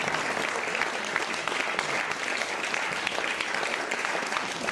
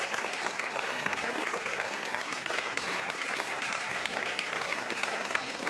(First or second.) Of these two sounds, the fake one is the second